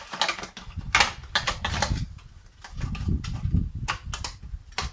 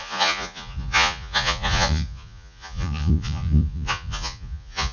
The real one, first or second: first